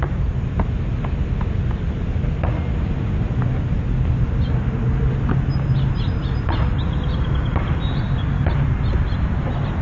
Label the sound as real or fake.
real